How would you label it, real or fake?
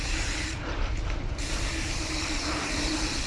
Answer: fake